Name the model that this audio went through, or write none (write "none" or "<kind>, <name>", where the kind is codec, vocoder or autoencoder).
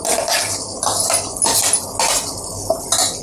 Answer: none